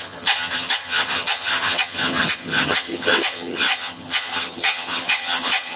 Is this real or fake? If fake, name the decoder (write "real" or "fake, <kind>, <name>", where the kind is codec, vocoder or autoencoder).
fake, vocoder, HiFi-GAN